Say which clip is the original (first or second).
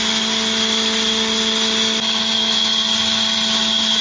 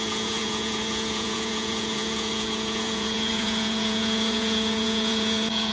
first